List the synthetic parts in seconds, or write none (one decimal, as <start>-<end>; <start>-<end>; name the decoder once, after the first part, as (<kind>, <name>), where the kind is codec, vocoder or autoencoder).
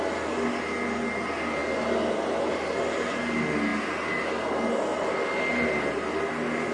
none